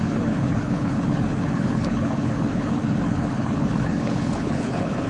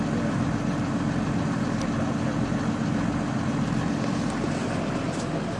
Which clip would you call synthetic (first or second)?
first